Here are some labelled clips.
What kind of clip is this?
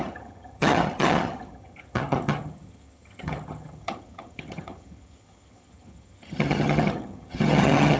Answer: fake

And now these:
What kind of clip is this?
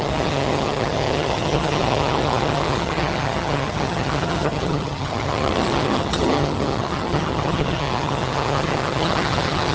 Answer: fake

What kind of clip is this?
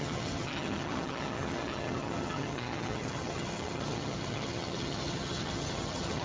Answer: fake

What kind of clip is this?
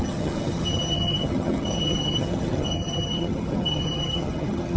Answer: fake